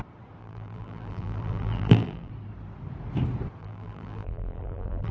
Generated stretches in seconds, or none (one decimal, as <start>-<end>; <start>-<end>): 0.4-2.3; 3.6-5.1